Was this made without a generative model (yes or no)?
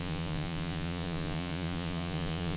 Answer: no